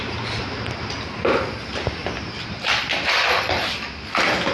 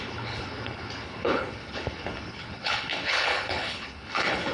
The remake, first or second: second